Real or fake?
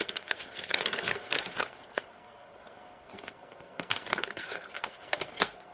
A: fake